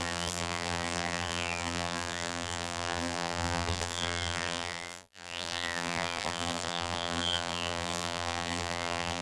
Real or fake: fake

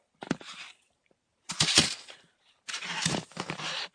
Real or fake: fake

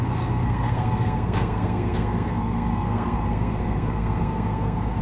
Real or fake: fake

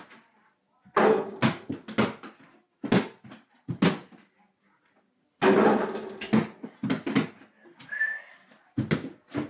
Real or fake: real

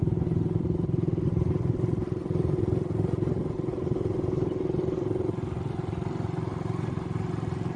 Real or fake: real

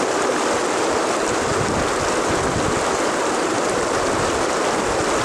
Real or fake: real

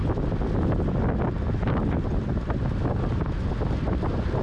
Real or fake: real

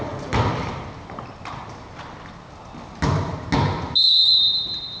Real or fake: real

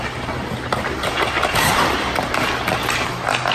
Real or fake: real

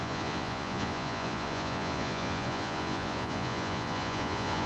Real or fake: fake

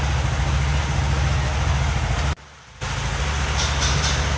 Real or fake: real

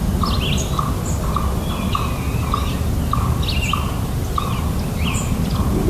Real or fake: real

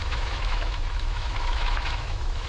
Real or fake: fake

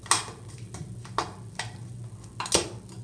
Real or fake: real